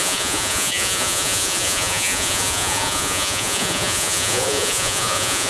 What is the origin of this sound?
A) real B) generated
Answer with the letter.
B